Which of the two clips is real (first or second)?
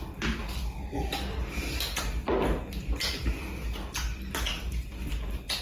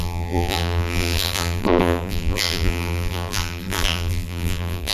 first